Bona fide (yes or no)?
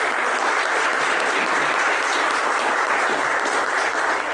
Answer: no